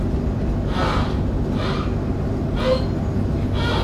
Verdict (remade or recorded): recorded